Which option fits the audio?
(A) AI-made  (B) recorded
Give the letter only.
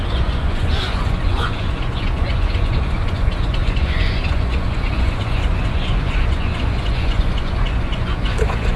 A